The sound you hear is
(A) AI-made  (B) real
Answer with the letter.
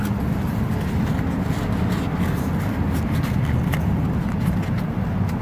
B